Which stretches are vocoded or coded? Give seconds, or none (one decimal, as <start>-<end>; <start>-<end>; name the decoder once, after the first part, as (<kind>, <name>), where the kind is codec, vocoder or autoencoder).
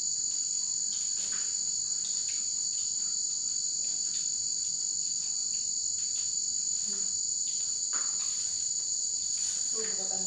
7.3-8.2 (vocoder, WaveNeXt); 8.6-9.2